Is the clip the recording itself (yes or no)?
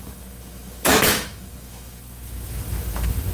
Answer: no